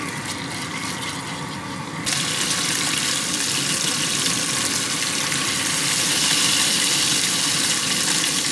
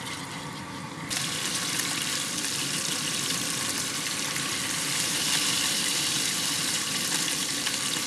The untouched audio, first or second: first